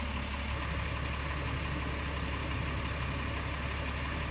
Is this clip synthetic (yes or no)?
no